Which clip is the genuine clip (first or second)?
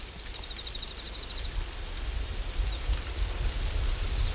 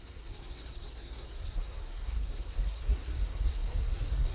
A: first